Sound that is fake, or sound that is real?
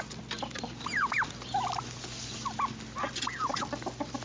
real